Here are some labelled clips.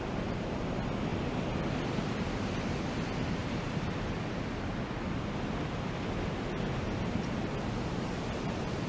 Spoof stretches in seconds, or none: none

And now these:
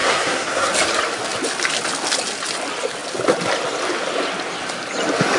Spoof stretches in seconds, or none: 0.0-0.7

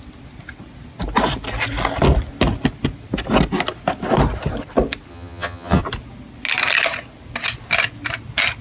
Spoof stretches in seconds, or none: 5.1-5.8

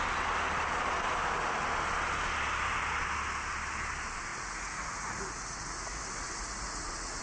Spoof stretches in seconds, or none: 4.3-7.2

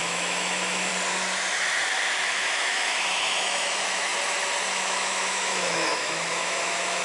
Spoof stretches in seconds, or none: 0.0-0.9; 2.1-4.1; 4.7-7.0

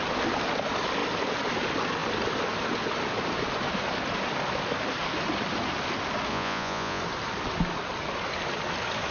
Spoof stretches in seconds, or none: 6.3-7.0

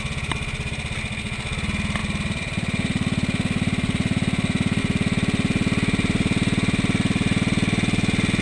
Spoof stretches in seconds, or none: none

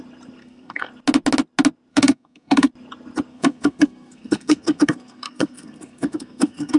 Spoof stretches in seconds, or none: 0.4-0.9; 1.9-2.7; 3.3-6.8